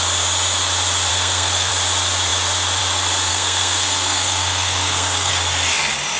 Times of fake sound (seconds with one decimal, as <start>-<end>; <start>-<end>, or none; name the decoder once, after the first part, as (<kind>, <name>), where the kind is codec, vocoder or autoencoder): 1.1-1.7 (codec, SNAC); 3.3-5.3